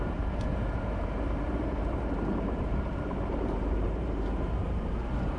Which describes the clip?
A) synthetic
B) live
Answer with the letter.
A